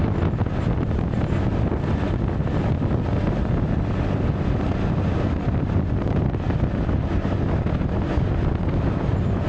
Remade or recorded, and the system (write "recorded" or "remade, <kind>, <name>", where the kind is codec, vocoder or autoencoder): recorded